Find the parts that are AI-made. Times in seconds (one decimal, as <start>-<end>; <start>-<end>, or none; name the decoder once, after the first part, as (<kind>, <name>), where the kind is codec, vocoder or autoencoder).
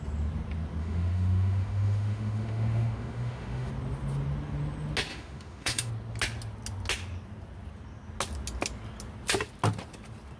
0.8-3.7 (autoencoder, DAC-VAE); 5.1-5.9